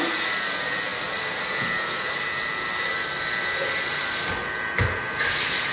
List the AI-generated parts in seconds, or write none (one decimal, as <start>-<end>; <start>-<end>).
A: none